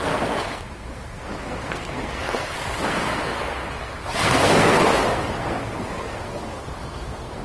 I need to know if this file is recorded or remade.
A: remade